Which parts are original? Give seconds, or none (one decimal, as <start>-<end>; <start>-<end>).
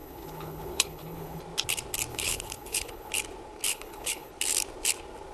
1.4-2.1; 3.1-3.7; 4.3-5.3